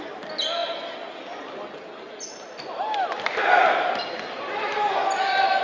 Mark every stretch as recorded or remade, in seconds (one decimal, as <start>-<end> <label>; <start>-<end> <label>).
0.0-5.6 recorded